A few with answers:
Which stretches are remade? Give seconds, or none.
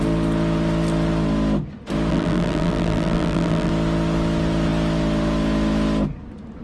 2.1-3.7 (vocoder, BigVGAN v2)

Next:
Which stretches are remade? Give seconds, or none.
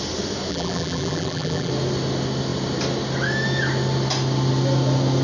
0.5-1.7 (vocoder, BigVGAN v2)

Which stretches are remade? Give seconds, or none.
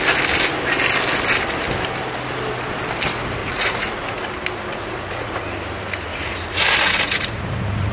3.4-4.2 (vocoder, Vocos); 4.7-5.4; 6.1-7.9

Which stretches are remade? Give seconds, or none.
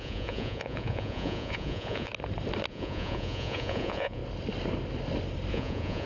0.0-2.1 (vocoder, Vocos); 2.7-4.2; 5.5-6.1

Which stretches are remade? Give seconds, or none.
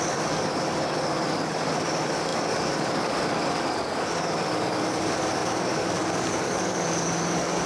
0.0-7.7 (codec, DAC)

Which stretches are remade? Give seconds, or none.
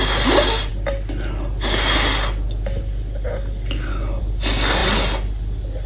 none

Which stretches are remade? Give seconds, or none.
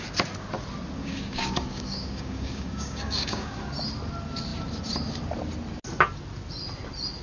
1.0-3.6 (codec, DAC)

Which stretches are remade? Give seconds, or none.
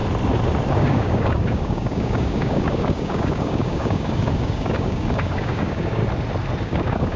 0.7-6.0 (codec, DAC); 6.6-7.2